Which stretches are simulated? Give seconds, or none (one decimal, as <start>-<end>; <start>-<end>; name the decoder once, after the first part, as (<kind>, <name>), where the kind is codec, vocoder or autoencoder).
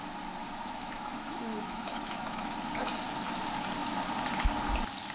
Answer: 0.4-2.6 (autoencoder, DAC-VAE)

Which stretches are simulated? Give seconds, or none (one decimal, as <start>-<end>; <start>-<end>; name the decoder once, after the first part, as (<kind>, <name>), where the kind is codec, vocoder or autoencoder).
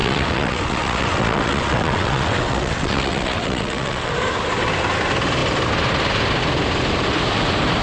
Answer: 0.0-4.1 (vocoder, WaveNeXt)